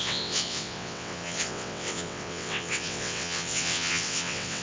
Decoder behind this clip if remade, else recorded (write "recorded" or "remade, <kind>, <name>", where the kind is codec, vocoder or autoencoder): remade, vocoder, WaveNeXt